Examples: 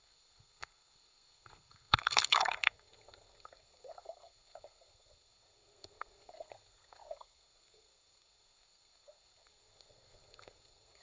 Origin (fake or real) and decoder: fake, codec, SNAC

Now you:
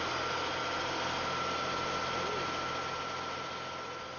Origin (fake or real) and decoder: real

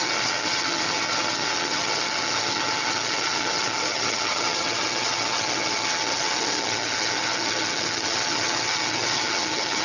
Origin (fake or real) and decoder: fake, vocoder, HiFi-GAN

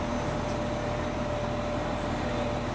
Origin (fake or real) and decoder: real